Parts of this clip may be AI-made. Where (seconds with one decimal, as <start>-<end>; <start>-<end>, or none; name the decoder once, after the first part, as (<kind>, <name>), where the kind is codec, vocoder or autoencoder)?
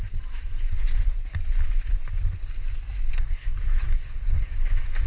3.1-4.5 (codec, SNAC)